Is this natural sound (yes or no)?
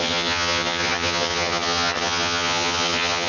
no